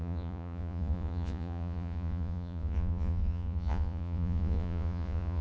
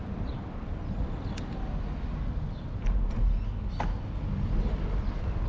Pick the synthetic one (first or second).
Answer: first